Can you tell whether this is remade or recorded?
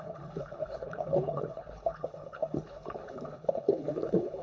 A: remade